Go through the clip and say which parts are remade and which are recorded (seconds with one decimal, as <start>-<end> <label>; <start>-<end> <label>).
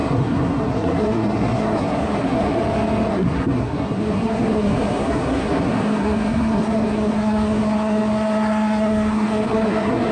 0.0-2.6 remade; 2.6-3.1 recorded; 3.1-10.1 remade